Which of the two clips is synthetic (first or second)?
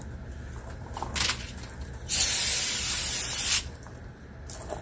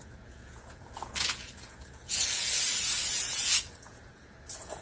second